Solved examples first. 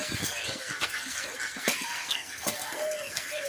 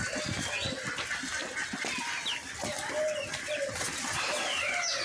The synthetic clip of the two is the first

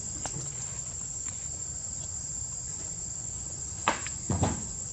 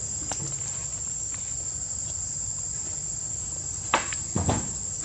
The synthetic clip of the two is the first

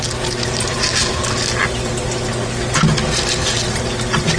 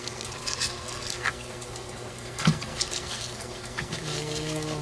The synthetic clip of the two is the second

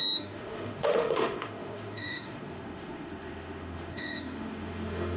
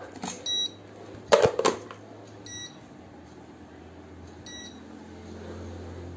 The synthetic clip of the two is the first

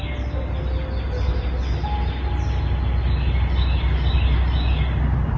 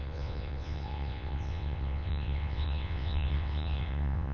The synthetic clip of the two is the second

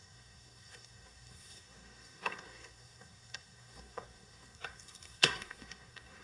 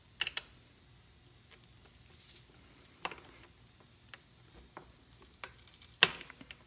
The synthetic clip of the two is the first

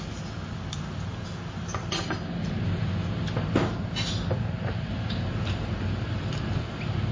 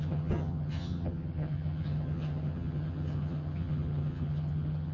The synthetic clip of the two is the second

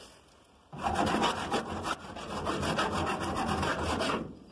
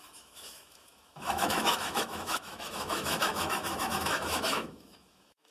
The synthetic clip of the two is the second